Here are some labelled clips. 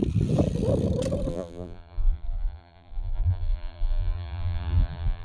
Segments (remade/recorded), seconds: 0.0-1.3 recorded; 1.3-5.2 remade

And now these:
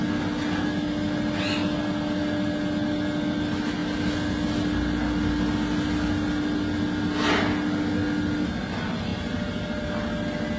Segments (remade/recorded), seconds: 0.0-9.1 recorded; 9.1-9.8 remade; 9.8-10.6 recorded

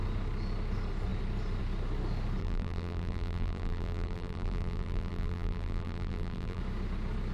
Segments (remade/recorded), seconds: 0.0-2.4 recorded; 2.4-6.6 remade; 6.6-7.3 recorded

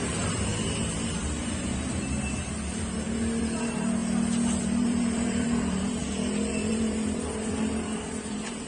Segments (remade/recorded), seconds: 0.0-0.5 remade; 0.5-3.4 recorded; 3.4-4.0 remade; 4.0-4.6 recorded; 4.6-6.0 remade; 6.0-6.7 recorded; 6.7-8.7 remade

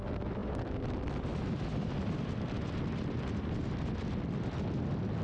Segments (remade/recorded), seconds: 0.0-0.4 recorded; 0.4-0.9 remade; 0.9-1.3 recorded; 1.3-4.4 remade; 4.4-5.2 recorded

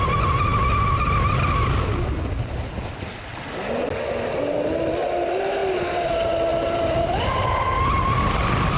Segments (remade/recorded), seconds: 0.0-5.6 recorded; 5.6-6.1 remade; 6.1-6.5 recorded; 6.5-7.2 remade; 7.2-8.8 recorded

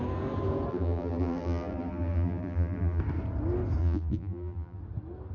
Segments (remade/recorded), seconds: 0.0-0.7 recorded; 0.7-3.0 remade; 3.0-3.8 recorded; 3.8-4.8 remade; 4.8-5.3 recorded